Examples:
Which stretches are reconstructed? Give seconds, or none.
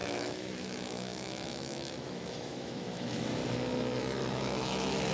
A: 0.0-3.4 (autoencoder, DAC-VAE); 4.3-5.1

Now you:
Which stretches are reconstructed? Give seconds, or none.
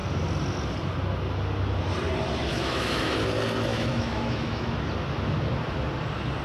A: 2.5-3.1 (autoencoder, DAC-VAE); 3.7-4.7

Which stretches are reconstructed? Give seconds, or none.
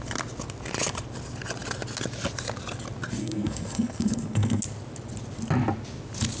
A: 3.2-4.6 (codec, SNAC)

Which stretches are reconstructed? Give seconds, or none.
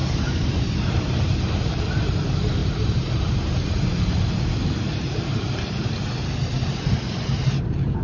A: 0.0-1.7 (vocoder, BigVGAN v2); 2.6-6.3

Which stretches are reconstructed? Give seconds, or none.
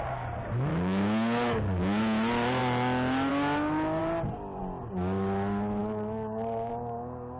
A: 0.7-2.0 (codec, DAC); 5.8-6.7